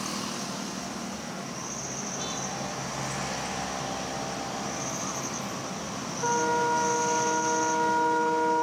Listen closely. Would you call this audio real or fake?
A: real